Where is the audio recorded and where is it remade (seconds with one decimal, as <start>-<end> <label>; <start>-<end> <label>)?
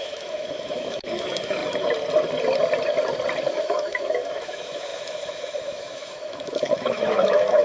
0.0-1.6 remade; 1.6-3.5 recorded; 3.5-7.6 remade